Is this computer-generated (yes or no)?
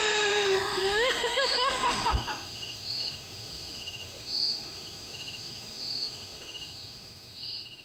yes